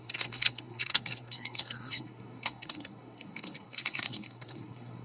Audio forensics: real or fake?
fake